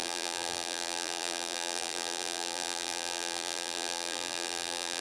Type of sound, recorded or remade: remade